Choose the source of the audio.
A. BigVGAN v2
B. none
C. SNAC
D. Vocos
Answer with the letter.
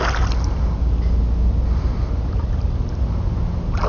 B